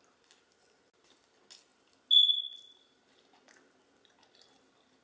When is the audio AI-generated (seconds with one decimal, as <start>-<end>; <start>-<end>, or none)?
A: none